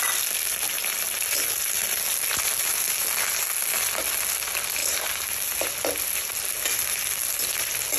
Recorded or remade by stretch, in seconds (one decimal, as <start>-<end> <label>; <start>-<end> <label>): 0.0-8.0 recorded